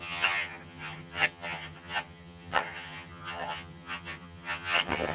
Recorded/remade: remade